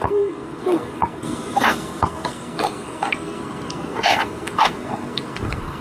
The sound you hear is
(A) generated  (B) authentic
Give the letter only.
A